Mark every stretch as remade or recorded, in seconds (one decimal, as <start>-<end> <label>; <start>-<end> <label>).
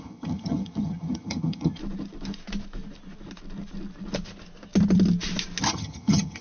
0.0-1.8 remade; 1.8-5.6 recorded; 5.6-6.4 remade